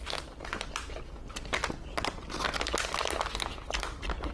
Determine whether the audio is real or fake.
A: real